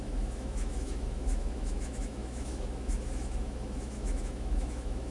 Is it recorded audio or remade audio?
remade